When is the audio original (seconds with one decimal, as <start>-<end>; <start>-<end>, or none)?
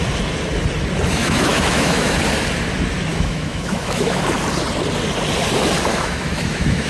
0.0-1.2; 2.2-3.1; 4.2-5.9